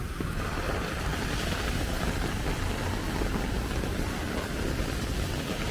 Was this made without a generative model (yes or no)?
yes